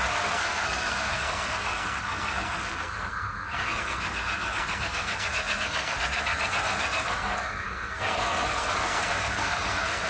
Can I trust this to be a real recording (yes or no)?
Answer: no